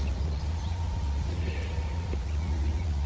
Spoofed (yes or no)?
yes